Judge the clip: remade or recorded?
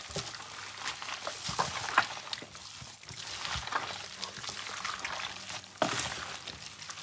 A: recorded